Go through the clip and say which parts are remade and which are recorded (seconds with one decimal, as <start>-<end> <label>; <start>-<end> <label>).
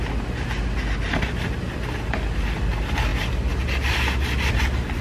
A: 0.0-5.0 recorded